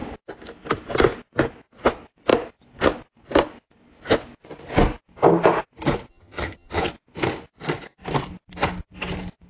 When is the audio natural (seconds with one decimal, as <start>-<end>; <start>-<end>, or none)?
0.0-6.1; 6.8-9.5